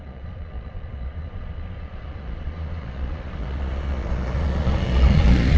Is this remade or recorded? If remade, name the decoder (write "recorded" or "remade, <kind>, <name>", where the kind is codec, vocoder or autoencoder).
remade, vocoder, Vocos